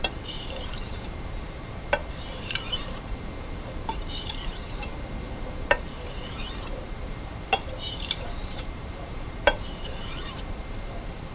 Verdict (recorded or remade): remade